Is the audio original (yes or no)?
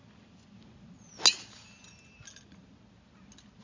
yes